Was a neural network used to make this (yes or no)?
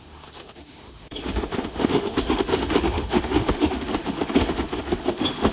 yes